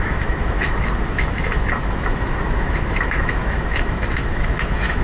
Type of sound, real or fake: fake